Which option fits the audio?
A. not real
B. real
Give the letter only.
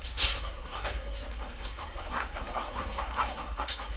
A